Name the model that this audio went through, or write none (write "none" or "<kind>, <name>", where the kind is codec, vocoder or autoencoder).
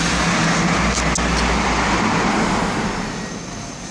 none